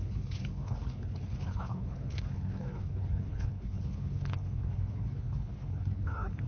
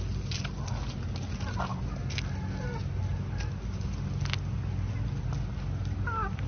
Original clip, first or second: second